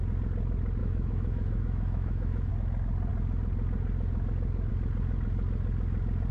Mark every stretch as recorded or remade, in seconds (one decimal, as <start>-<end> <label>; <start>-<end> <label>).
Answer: 0.0-0.8 recorded; 0.8-2.5 remade; 2.5-6.3 recorded

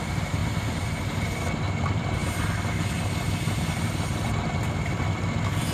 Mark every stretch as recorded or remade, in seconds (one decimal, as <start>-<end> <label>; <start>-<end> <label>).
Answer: 0.0-5.7 recorded